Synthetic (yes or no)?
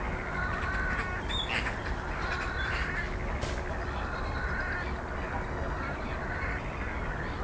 no